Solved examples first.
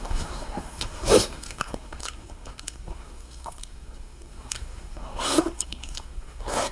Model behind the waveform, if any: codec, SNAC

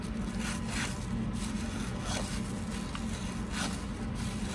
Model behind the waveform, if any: none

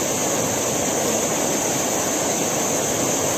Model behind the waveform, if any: none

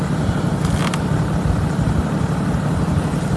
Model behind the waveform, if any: none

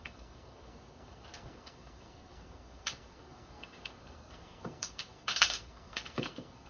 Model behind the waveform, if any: codec, SNAC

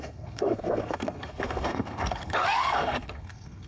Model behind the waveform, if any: codec, SNAC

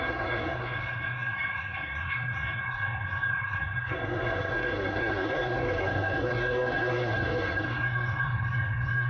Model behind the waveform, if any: codec, SNAC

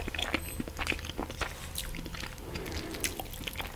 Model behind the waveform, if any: none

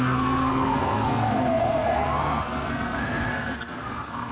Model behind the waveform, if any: codec, SNAC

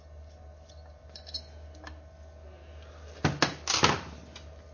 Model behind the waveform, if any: none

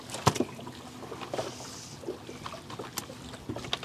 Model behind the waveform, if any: none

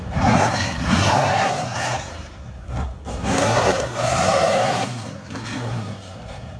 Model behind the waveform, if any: codec, SNAC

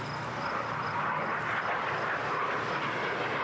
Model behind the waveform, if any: none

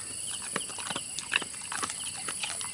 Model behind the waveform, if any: none